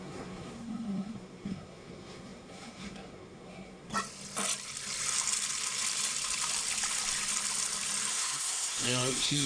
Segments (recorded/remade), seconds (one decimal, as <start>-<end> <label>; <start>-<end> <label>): 0.0-3.9 remade; 3.9-8.1 recorded; 8.1-9.5 remade

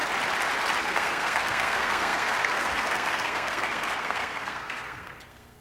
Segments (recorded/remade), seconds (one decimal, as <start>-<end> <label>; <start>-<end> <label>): 0.0-0.8 recorded; 0.8-5.6 remade

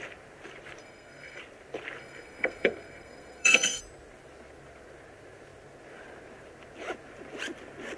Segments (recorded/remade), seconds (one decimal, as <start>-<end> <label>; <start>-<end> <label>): 0.0-0.8 recorded; 0.8-1.4 remade; 1.4-2.0 recorded; 2.0-3.8 remade; 3.8-8.0 recorded

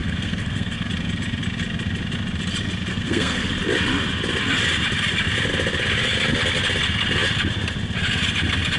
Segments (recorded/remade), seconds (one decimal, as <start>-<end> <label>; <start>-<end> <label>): 0.0-0.9 remade; 0.9-2.9 recorded; 2.9-3.5 remade; 3.5-8.8 recorded

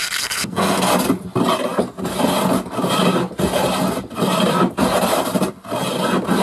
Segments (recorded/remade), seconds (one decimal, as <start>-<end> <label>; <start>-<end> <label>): 0.0-0.9 remade; 0.9-6.4 recorded

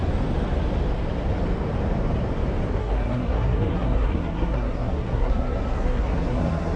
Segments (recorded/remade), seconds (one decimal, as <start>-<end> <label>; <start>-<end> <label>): 0.0-2.8 recorded; 2.8-6.8 remade